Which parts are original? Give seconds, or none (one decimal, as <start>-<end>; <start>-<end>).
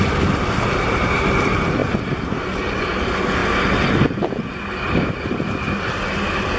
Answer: 0.0-6.6